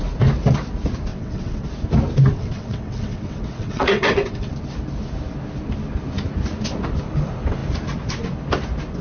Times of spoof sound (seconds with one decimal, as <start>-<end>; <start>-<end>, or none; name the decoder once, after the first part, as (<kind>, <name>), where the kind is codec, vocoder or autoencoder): 1.1-1.7 (vocoder, WaveNeXt); 2.3-4.5